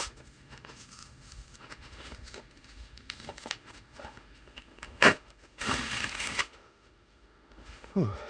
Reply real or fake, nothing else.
fake